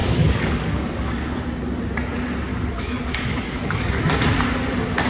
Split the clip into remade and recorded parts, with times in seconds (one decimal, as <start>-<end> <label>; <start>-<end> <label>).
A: 0.0-1.4 remade; 1.4-2.5 recorded; 2.5-3.9 remade; 3.9-5.1 recorded